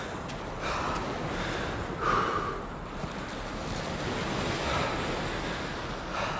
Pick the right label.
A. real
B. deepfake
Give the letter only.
A